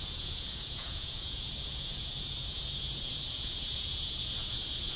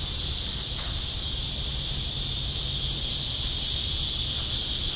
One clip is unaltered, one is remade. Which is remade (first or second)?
first